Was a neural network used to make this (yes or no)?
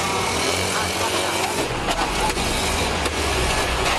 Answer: yes